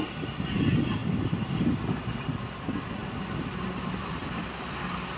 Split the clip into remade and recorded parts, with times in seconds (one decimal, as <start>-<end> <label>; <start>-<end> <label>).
0.0-5.2 recorded